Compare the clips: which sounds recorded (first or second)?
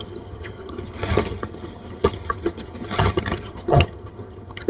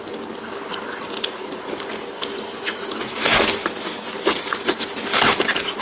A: second